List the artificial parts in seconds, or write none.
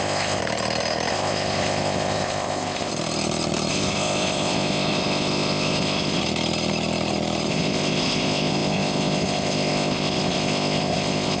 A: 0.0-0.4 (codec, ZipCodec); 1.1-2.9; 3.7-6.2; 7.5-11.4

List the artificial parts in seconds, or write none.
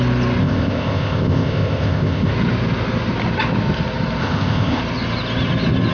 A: 0.4-2.3 (codec, ZipCodec); 4.2-4.8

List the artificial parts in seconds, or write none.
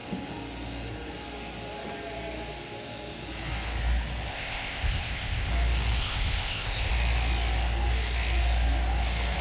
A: 4.3-5.5 (codec, ZipCodec); 6.0-6.9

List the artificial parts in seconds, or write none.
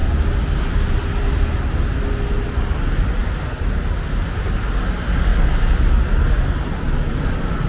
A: none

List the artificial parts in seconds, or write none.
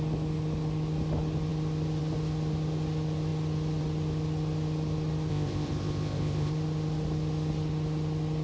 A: 5.3-6.5 (codec, ZipCodec)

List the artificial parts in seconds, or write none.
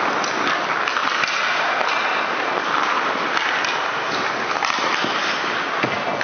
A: none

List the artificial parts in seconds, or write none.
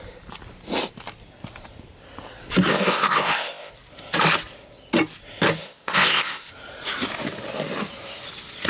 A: 2.7-3.7 (codec, ZipCodec); 5.6-6.5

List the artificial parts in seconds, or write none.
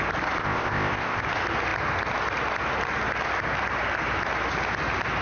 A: 0.4-1.2 (codec, ZipCodec)